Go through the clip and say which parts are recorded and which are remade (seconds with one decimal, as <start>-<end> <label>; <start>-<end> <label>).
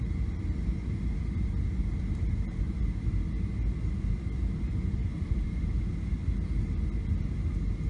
0.0-5.1 recorded; 5.1-5.8 remade; 5.8-7.9 recorded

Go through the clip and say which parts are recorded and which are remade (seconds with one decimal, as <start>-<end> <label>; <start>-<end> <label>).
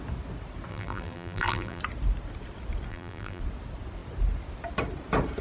0.0-0.7 recorded; 0.7-1.8 remade; 1.8-2.9 recorded; 2.9-3.4 remade; 3.4-5.4 recorded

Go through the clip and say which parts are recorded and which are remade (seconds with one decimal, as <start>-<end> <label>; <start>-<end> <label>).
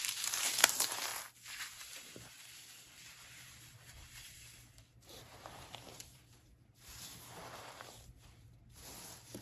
0.0-1.1 remade; 1.1-1.7 recorded; 1.7-6.9 remade; 6.9-7.4 recorded; 7.4-9.4 remade